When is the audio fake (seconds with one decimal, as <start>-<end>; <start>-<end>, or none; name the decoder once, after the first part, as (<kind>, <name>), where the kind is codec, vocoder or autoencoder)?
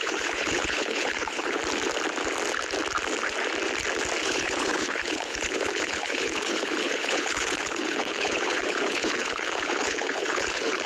0.0-1.6 (codec, HILCodec); 4.2-10.9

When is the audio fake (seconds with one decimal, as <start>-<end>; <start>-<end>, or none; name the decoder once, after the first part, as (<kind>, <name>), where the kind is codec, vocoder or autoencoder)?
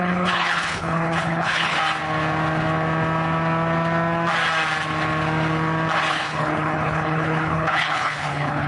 0.0-1.8 (codec, HILCodec); 6.1-8.7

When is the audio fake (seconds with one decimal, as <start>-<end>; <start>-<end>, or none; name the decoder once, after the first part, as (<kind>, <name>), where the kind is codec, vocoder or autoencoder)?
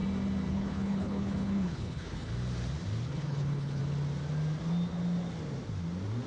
0.5-2.3 (codec, HILCodec); 3.1-3.8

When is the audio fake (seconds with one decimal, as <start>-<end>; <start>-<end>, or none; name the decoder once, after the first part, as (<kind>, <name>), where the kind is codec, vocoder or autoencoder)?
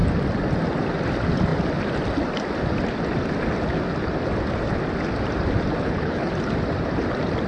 5.8-6.3 (codec, HILCodec)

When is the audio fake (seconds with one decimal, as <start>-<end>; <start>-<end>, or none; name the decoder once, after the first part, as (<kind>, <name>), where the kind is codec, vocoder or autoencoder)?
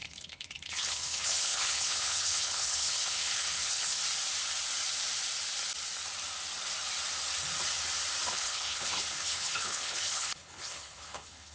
0.0-4.0 (codec, HILCodec); 8.3-11.5